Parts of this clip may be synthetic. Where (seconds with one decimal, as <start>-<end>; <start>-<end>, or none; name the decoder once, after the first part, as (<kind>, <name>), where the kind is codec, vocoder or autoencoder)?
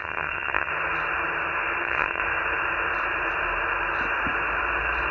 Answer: 0.0-0.7 (vocoder, HiFi-GAN); 1.8-2.2